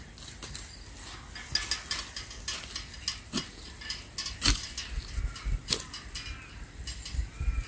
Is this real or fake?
real